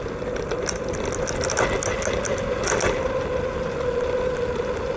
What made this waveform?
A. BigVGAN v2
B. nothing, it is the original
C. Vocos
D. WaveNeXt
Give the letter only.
B